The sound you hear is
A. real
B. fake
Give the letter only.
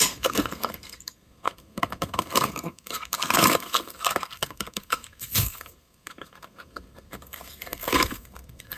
B